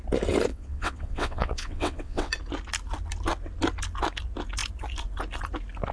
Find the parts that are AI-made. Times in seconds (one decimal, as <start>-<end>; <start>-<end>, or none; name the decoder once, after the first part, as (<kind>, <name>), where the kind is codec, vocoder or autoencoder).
0.5-2.3 (vocoder, WaveNeXt)